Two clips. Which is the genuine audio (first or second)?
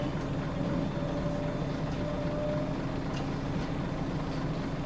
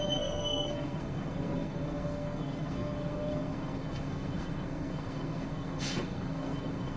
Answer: first